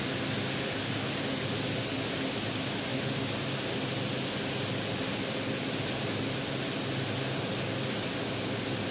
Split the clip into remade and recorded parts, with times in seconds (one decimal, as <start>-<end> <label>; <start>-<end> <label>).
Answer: 0.0-8.9 recorded